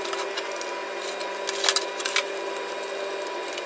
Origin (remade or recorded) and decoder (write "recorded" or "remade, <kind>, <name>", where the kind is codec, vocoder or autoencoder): recorded